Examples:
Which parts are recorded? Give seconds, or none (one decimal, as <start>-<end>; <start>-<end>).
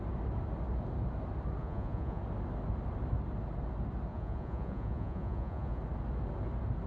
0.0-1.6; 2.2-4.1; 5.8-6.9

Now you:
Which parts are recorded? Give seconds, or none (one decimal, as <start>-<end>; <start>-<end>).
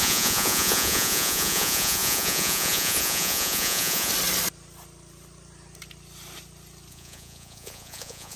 4.1-6.9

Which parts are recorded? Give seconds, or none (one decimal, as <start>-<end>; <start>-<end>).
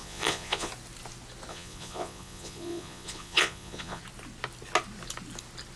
0.7-1.5; 4.0-5.8